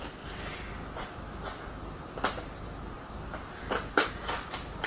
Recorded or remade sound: recorded